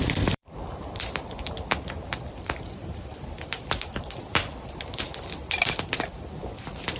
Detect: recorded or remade remade